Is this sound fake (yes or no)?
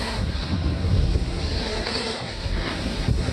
yes